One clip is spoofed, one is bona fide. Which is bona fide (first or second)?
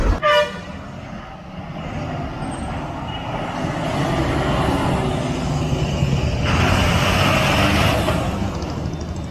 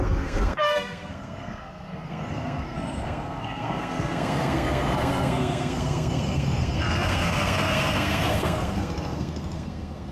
first